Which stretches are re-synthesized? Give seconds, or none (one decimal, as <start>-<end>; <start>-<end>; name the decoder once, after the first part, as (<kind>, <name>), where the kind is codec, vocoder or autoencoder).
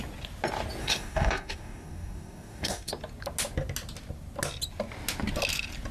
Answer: 0.8-2.9 (codec, DAC)